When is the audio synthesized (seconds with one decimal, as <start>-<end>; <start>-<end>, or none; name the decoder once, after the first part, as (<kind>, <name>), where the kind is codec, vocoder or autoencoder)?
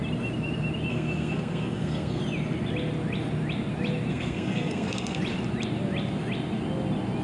0.9-2.2 (codec, SNAC); 4.1-5.2